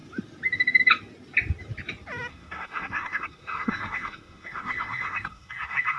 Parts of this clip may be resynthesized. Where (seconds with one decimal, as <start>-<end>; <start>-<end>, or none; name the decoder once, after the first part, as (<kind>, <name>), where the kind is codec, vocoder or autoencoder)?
2.3-6.0 (codec, SNAC)